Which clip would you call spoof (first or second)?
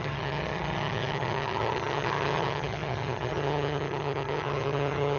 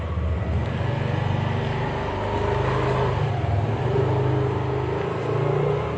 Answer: first